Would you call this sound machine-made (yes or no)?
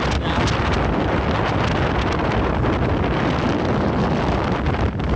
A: no